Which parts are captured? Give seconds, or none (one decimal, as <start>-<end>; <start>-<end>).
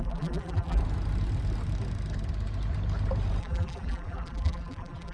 0.8-3.4